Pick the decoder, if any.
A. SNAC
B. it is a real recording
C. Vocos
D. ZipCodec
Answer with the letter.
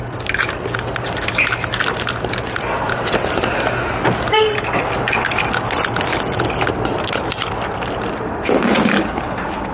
B